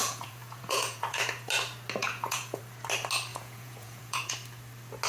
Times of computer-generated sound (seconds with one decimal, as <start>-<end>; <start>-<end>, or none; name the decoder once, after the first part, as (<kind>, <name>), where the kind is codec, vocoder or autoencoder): 0.0-1.2 (vocoder, Vocos); 2.0-2.6; 3.3-4.3